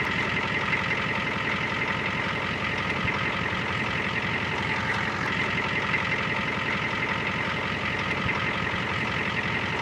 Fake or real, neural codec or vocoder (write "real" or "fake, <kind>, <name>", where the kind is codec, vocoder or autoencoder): real